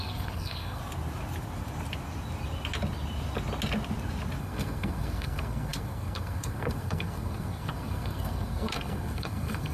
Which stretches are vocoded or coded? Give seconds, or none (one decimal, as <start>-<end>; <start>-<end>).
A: 0.0-0.8; 4.4-9.7